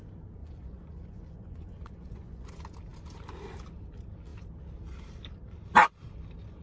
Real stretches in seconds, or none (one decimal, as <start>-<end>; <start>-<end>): 0.0-0.4; 2.5-6.6